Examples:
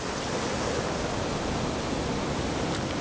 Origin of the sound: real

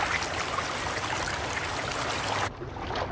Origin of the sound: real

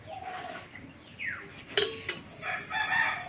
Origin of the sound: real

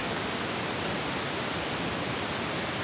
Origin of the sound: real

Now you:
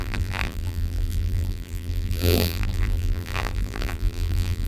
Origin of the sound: fake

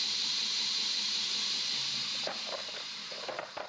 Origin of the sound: fake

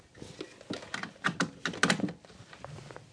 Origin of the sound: real